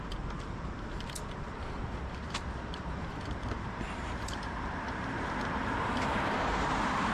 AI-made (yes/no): yes